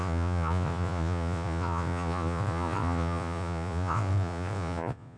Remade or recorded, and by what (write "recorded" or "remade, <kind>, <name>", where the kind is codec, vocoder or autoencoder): remade, vocoder, Vocos